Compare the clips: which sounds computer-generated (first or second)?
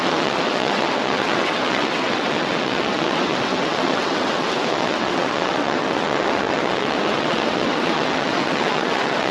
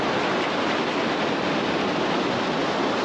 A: first